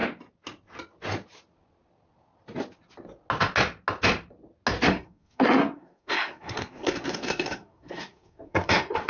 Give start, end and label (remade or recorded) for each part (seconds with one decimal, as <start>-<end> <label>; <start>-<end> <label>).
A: 0.0-4.9 recorded; 4.9-9.1 remade